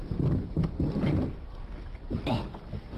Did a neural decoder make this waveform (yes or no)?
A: no